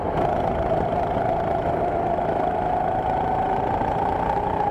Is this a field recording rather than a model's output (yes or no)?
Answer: no